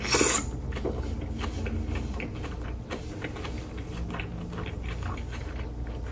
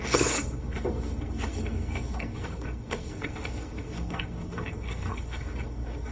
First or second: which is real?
first